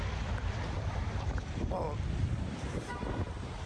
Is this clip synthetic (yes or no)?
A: yes